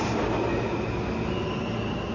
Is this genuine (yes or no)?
yes